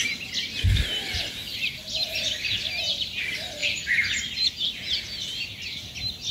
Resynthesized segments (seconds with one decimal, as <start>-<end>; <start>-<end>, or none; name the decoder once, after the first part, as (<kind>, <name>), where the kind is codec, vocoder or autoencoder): 1.5-2.8 (vocoder, BigVGAN v2); 3.6-4.5